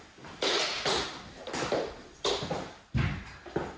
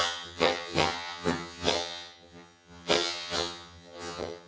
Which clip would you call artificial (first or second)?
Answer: second